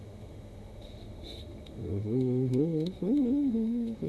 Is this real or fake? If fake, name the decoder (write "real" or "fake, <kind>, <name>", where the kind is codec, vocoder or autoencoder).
fake, autoencoder, DAC-VAE